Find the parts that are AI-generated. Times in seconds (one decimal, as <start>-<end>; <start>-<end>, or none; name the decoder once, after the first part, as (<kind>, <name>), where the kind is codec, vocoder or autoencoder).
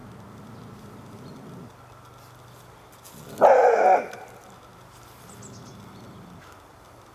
none